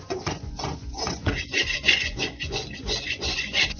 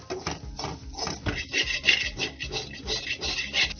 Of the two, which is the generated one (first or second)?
first